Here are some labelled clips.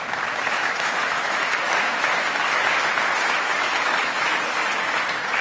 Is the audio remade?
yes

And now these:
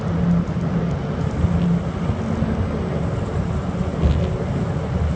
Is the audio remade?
no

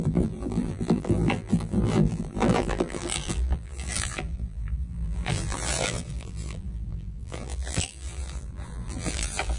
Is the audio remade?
yes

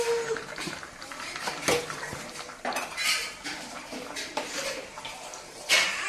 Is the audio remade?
yes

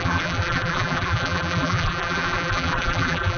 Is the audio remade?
yes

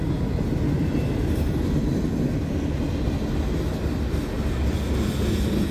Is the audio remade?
no